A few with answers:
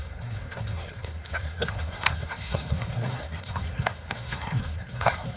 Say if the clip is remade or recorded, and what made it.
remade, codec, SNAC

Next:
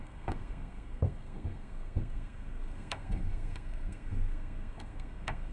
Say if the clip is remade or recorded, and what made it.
remade, codec, SNAC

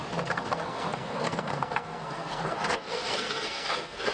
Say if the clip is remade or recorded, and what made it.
remade, codec, SNAC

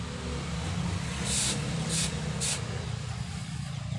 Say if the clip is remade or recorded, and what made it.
recorded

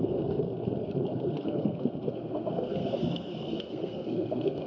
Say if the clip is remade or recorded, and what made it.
remade, codec, SNAC